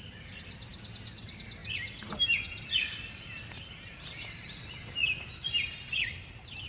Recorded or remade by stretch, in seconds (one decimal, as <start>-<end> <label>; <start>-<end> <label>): 0.0-6.7 recorded